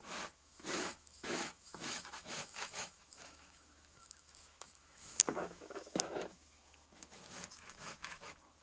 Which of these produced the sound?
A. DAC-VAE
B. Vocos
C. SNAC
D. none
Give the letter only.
A